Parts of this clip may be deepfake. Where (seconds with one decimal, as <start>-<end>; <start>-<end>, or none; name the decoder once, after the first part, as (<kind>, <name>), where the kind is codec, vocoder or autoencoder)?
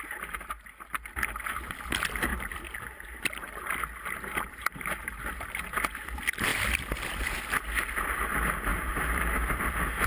6.5-7.3 (vocoder, BigVGAN v2); 8.7-9.7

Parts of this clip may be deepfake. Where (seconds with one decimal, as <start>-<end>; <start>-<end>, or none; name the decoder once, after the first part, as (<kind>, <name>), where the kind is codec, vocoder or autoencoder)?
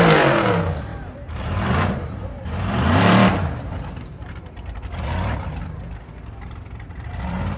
0.9-5.5 (vocoder, BigVGAN v2)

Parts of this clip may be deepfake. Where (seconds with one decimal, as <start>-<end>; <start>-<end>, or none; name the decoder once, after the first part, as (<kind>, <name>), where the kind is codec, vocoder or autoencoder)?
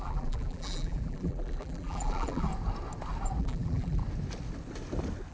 0.0-2.5 (vocoder, BigVGAN v2); 3.4-4.0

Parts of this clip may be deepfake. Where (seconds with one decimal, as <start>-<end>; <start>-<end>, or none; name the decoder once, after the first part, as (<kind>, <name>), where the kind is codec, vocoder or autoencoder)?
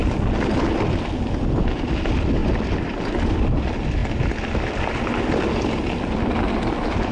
2.4-3.3 (vocoder, BigVGAN v2)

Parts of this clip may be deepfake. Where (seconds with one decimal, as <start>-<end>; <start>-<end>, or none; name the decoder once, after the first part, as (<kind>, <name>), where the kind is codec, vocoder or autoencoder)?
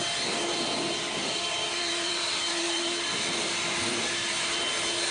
1.2-4.3 (vocoder, BigVGAN v2)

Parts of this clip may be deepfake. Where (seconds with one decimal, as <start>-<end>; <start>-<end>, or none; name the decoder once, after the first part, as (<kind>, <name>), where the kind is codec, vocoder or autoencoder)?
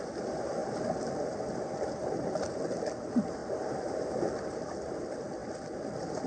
0.0-0.6 (vocoder, BigVGAN v2); 2.2-3.4; 4.7-6.3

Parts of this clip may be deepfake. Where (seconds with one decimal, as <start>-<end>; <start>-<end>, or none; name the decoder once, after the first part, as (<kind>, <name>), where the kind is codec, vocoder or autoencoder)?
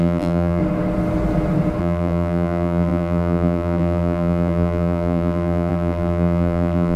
0.0-0.6 (vocoder, BigVGAN v2); 1.8-7.0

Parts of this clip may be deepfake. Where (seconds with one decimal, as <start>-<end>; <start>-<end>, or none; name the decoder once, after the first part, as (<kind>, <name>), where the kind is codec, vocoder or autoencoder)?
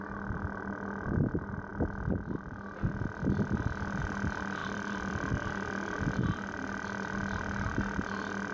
4.6-5.3 (vocoder, BigVGAN v2)